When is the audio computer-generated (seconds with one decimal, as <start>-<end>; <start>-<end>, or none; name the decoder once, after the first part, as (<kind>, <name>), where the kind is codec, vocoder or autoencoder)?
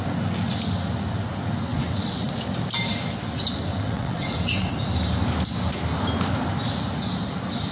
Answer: 1.7-2.3 (vocoder, WaveNeXt); 3.7-4.7